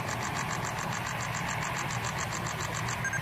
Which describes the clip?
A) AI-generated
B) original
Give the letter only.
B